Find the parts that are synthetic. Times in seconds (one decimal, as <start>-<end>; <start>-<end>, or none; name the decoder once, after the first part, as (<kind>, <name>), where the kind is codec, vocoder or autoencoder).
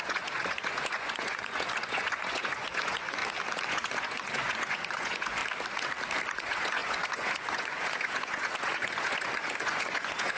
0.0-3.2 (vocoder, Vocos); 3.7-5.4; 6.3-10.4